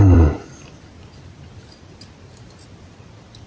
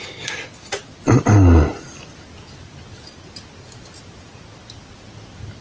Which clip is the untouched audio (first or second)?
second